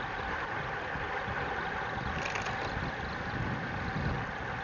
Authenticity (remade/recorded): recorded